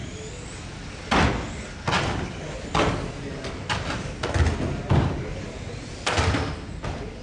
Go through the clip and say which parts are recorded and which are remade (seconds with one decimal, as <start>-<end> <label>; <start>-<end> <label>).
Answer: 0.0-7.2 recorded